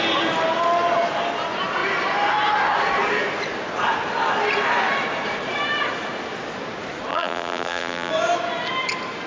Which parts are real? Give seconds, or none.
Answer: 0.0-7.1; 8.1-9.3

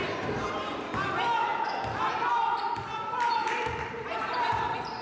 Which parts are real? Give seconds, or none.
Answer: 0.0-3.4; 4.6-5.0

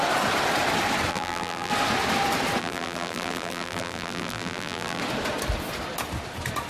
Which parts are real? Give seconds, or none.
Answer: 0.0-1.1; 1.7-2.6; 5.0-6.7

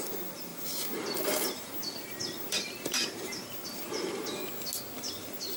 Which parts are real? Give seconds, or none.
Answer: 4.4-5.1

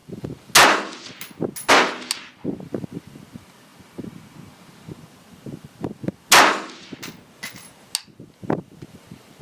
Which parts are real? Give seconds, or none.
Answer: 0.0-9.4

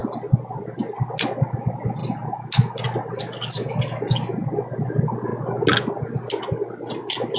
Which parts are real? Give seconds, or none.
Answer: 0.0-7.4

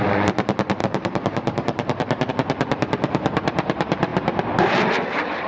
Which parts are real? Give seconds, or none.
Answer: 0.0-0.8; 2.3-5.5